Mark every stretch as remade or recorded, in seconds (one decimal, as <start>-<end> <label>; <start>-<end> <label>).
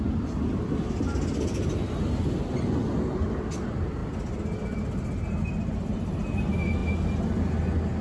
0.0-8.0 recorded